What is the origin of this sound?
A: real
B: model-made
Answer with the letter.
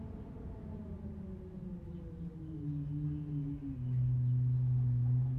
A